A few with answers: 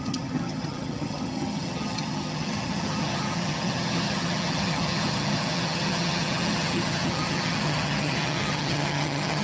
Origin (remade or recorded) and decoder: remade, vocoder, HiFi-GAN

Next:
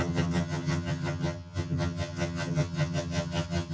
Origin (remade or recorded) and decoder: remade, vocoder, HiFi-GAN